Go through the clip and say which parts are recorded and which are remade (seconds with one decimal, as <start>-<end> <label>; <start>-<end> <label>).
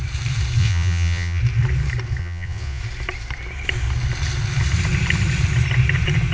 0.0-0.6 recorded; 0.6-1.4 remade; 1.4-2.2 recorded; 2.2-2.8 remade; 2.8-6.3 recorded